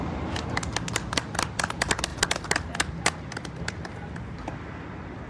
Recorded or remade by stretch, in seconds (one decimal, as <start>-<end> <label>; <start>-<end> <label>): 0.0-5.3 recorded